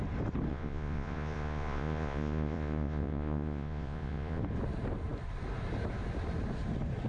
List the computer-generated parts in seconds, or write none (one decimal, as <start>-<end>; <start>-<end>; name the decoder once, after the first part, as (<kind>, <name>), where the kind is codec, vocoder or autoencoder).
0.5-4.4 (vocoder, Vocos)